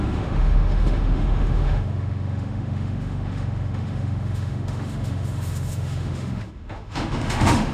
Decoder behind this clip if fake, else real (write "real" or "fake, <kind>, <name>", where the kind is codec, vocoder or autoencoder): fake, autoencoder, DAC-VAE